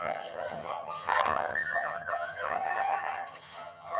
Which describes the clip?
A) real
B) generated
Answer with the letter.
B